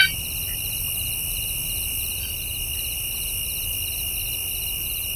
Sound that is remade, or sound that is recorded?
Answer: recorded